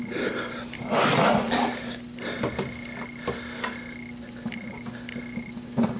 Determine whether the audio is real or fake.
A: real